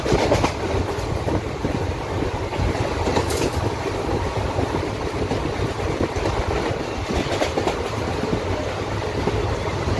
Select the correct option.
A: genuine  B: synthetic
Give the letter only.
A